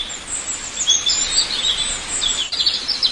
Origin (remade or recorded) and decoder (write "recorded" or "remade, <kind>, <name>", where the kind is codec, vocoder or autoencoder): recorded